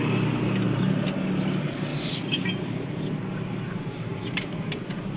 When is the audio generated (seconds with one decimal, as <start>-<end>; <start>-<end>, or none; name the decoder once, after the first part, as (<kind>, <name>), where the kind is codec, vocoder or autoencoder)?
1.9-3.0 (vocoder, BigVGAN v2); 4.1-4.8